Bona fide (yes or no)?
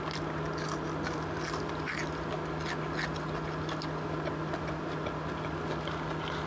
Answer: yes